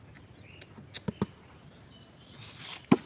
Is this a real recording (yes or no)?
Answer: yes